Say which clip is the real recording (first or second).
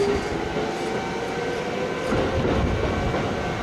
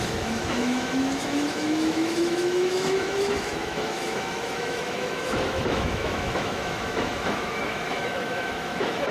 first